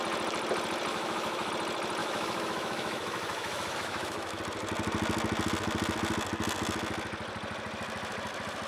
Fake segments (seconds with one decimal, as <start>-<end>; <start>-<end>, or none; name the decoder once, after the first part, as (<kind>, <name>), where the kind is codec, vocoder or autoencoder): 0.9-1.5 (autoencoder, DAC-VAE); 2.0-4.4